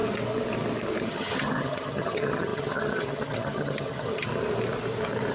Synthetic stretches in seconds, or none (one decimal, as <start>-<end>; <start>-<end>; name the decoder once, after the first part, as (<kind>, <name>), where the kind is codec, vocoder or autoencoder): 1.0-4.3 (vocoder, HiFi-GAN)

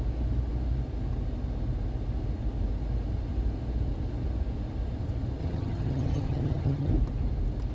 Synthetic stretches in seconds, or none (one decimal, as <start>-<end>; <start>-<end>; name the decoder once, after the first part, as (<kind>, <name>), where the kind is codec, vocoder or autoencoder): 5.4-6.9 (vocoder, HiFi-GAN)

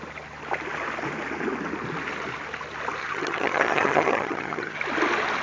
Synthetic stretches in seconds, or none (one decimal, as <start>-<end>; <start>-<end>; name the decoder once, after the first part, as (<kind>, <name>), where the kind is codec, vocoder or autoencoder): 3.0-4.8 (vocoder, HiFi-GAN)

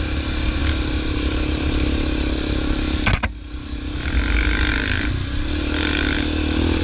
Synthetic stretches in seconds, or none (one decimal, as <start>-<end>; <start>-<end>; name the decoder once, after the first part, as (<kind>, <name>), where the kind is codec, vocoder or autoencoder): none

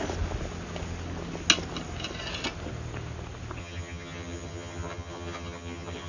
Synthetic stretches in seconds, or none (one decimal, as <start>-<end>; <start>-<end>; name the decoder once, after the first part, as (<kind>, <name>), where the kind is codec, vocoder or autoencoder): 3.6-6.1 (vocoder, HiFi-GAN)